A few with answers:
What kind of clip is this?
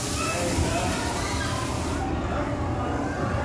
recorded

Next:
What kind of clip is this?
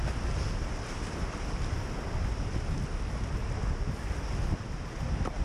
recorded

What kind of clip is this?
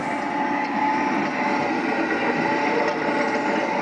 recorded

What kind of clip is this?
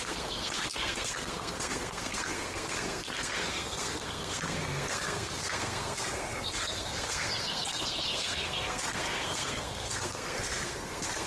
remade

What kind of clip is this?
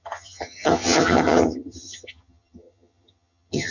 remade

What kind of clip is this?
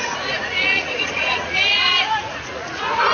remade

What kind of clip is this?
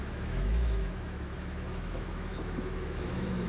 remade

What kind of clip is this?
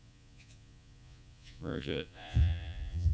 remade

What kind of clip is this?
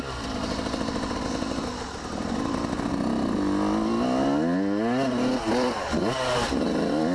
recorded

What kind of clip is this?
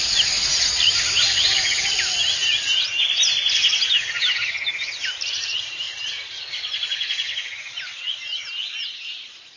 recorded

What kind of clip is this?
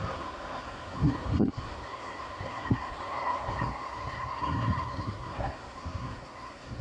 remade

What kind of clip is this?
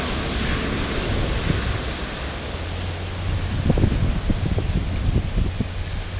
recorded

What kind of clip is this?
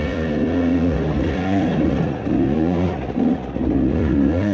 remade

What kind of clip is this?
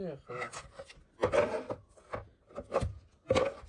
recorded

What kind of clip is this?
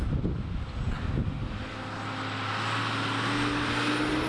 recorded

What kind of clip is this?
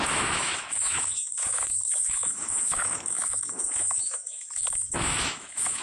remade